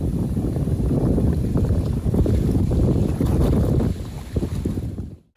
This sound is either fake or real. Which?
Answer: real